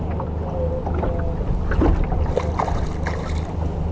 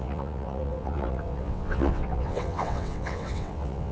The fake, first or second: second